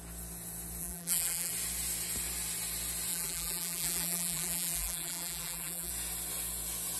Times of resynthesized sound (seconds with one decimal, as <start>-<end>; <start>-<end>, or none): 0.8-1.5; 3.1-5.9